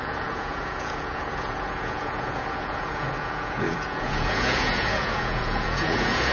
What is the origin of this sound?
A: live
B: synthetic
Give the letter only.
B